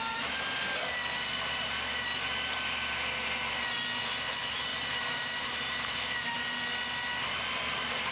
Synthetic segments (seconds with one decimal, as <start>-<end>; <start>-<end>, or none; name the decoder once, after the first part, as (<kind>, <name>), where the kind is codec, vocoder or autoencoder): 4.7-6.0 (vocoder, BigVGAN v2)